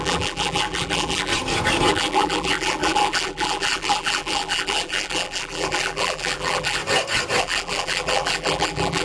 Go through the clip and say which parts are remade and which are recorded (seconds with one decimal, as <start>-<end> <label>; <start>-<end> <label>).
0.0-1.3 remade; 1.3-1.9 recorded; 1.9-6.8 remade; 6.8-7.4 recorded; 7.4-9.0 remade